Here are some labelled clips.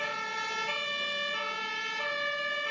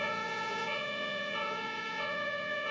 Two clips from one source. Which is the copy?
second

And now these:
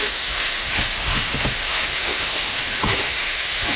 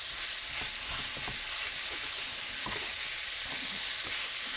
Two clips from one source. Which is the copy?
first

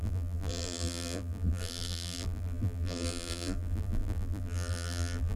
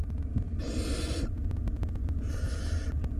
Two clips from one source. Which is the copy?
first